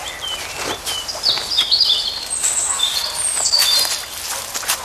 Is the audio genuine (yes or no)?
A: yes